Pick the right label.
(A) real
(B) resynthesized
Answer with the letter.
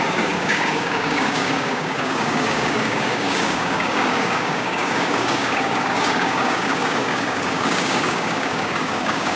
B